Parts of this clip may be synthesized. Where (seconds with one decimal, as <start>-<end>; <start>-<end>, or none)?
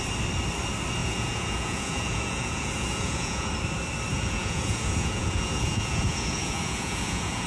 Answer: 1.0-3.5; 4.1-7.5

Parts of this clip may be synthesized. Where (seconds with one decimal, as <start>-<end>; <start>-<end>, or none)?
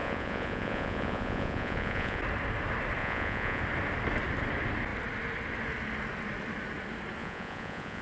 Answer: 0.0-2.2; 3.0-3.6; 7.2-8.0